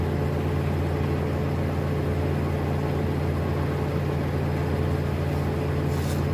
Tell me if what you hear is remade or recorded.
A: recorded